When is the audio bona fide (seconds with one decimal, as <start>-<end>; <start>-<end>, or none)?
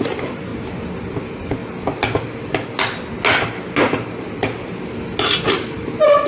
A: 0.5-1.2; 1.6-5.4